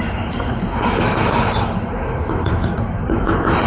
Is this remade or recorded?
remade